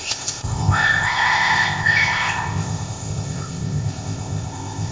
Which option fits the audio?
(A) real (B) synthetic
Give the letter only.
B